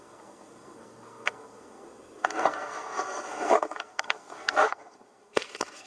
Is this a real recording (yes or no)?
no